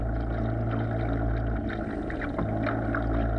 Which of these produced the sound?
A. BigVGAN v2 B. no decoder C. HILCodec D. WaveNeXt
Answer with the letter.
B